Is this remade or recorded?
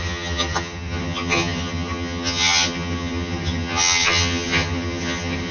remade